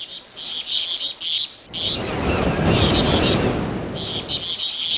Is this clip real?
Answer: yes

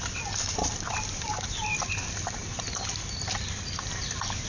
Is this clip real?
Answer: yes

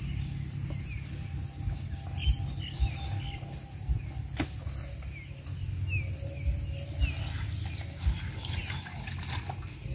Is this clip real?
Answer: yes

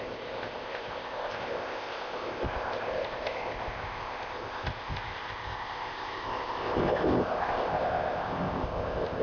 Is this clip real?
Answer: no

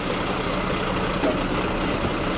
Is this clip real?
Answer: yes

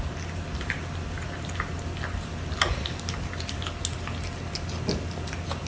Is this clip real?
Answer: yes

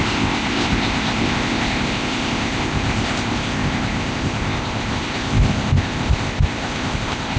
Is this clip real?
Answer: no